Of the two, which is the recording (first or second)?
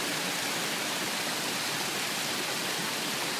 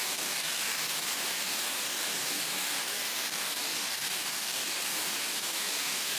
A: first